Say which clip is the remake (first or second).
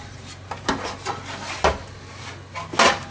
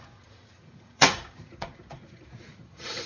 second